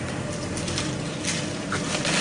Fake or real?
real